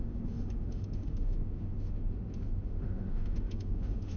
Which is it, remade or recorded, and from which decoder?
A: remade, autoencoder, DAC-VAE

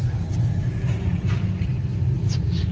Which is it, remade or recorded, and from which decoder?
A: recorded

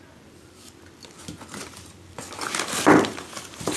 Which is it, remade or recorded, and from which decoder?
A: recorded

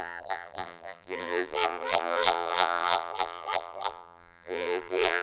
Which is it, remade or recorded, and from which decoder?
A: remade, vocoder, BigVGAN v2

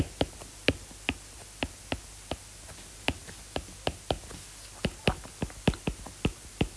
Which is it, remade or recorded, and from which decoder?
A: recorded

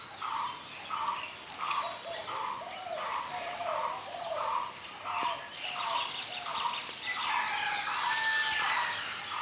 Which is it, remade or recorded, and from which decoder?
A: recorded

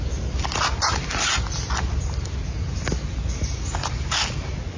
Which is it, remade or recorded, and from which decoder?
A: recorded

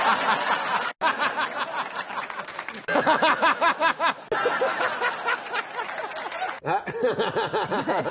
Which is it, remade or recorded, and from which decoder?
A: recorded